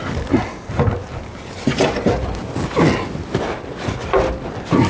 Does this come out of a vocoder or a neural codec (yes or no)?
no